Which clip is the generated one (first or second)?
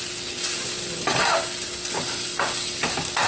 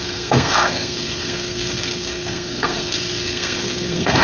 second